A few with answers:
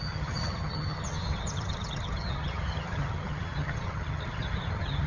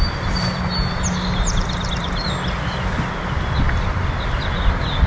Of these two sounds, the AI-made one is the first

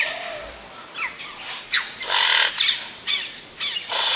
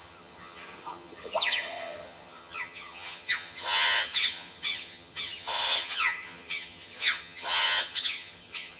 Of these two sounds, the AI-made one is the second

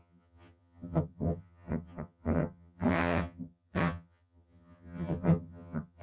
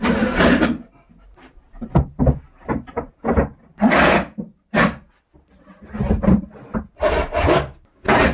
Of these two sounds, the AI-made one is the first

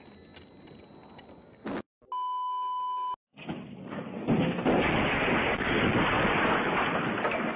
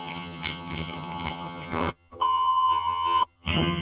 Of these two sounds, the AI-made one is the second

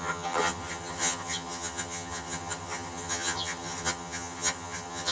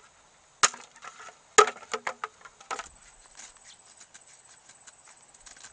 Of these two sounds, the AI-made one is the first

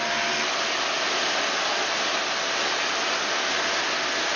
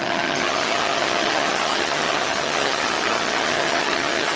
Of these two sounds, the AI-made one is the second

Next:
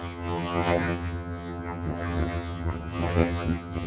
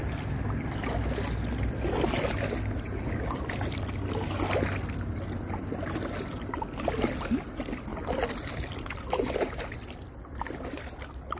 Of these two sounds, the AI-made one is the first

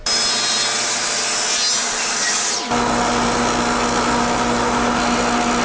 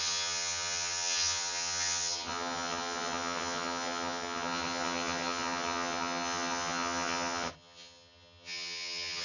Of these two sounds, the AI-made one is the second